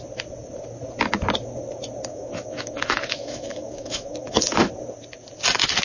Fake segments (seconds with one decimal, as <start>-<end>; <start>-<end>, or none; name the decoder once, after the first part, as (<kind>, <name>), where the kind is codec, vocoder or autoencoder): 2.1-4.7 (autoencoder, DAC-VAE)